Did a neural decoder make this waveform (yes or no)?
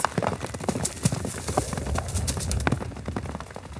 no